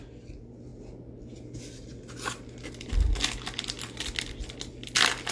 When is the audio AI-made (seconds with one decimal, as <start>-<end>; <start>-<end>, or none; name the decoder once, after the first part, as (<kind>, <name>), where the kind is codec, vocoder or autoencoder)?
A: none